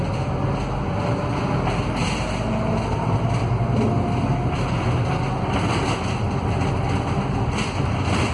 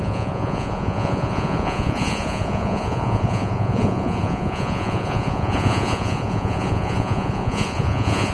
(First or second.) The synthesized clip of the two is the second